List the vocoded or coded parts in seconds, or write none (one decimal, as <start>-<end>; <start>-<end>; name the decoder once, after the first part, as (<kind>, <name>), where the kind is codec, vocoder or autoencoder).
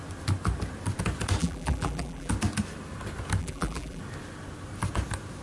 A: 1.4-2.3 (vocoder, BigVGAN v2); 3.4-4.0